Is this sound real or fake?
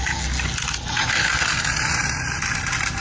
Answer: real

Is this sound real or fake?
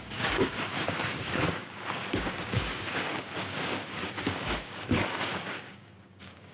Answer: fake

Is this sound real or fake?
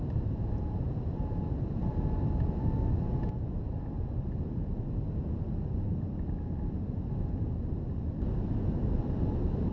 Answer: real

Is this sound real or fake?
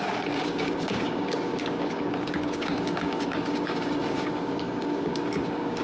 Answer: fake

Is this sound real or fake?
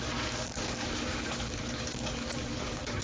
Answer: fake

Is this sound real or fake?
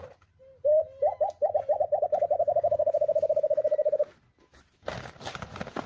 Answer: real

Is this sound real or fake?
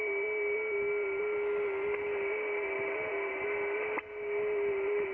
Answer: real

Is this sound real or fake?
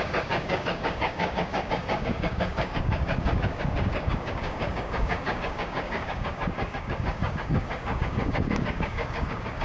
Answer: fake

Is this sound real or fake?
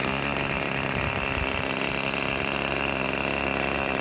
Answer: real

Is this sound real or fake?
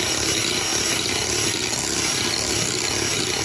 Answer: real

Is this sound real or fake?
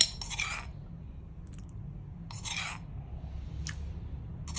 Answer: real